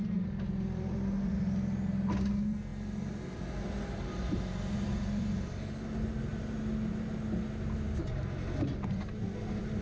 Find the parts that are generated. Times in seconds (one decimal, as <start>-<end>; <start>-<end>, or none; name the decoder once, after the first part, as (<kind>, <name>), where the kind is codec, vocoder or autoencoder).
none